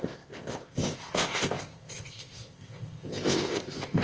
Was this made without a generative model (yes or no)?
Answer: no